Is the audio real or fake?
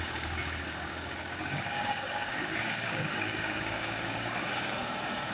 fake